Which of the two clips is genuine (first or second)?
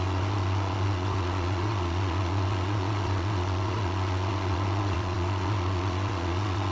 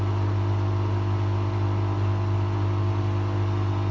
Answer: second